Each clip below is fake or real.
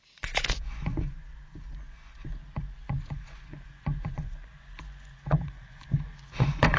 fake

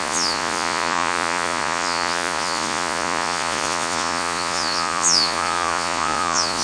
fake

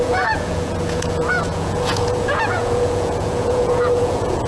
fake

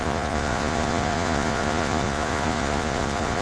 fake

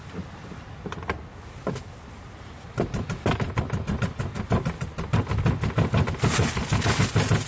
real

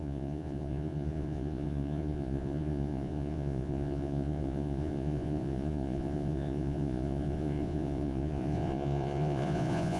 fake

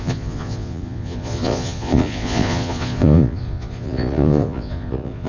fake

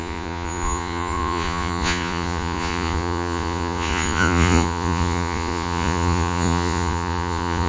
fake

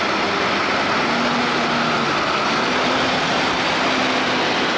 real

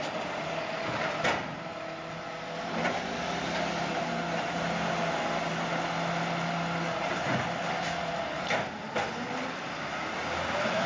real